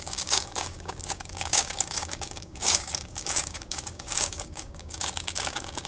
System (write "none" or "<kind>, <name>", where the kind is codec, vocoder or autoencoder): codec, DAC